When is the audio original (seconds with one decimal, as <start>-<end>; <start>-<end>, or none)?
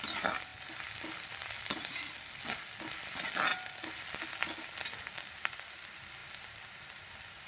0.0-7.5